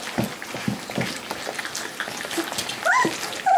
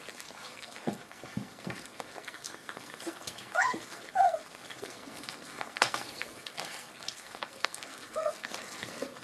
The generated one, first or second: second